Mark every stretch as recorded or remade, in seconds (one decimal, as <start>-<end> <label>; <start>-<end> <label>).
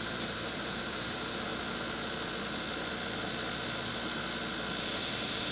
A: 0.0-1.5 remade; 1.5-4.8 recorded; 4.8-5.5 remade